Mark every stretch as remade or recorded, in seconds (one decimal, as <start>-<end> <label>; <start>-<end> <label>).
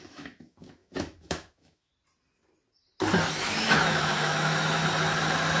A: 0.0-1.9 remade; 1.9-3.3 recorded; 3.3-4.8 remade; 4.8-5.6 recorded